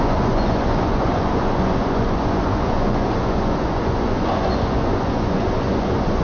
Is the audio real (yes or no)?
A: no